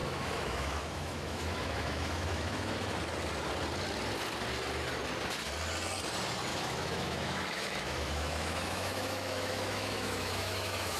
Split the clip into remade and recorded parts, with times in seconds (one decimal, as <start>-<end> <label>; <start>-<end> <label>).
0.0-3.0 remade; 3.0-6.5 recorded; 6.5-11.0 remade